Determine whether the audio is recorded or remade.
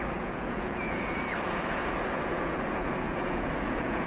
remade